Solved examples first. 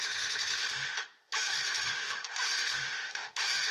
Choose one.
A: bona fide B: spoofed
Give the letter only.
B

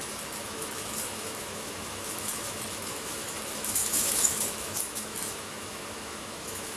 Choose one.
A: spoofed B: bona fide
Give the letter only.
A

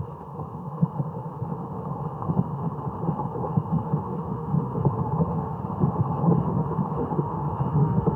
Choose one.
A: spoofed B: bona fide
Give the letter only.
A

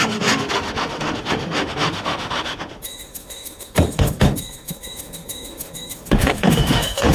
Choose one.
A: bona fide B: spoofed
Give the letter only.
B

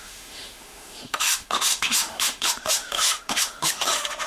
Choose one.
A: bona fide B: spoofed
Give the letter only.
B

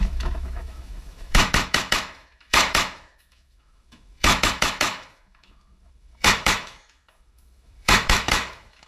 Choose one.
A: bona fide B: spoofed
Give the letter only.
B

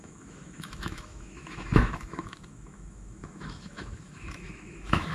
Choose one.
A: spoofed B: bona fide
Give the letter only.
A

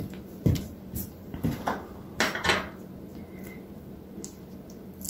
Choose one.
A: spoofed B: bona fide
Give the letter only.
B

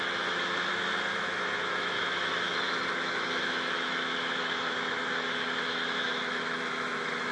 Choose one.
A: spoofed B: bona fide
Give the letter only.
A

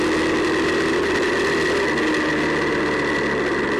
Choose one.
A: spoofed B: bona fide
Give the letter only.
B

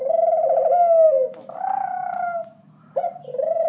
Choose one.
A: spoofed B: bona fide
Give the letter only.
B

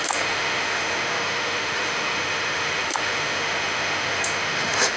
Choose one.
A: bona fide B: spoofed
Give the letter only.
B